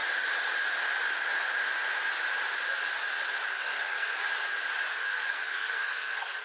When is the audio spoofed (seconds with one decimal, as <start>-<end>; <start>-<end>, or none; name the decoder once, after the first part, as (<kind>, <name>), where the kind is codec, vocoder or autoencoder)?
3.5-4.3 (codec, SNAC); 4.9-6.4